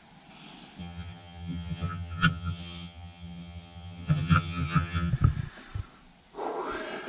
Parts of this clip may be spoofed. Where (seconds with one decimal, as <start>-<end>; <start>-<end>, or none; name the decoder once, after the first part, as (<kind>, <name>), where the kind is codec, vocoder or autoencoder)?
0.8-5.1 (vocoder, HiFi-GAN)